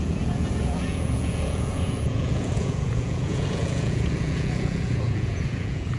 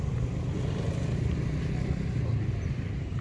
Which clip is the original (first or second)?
second